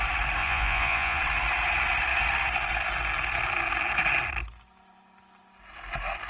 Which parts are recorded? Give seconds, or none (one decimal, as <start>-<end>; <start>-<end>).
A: 0.0-0.4; 1.2-6.3